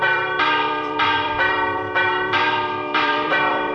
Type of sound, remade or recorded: remade